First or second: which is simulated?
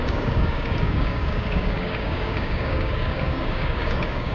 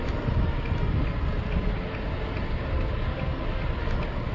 first